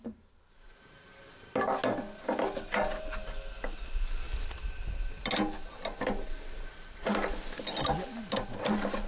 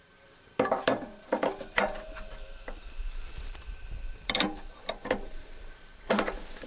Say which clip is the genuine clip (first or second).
first